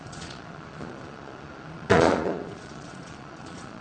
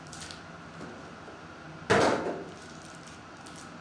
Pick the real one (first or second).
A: second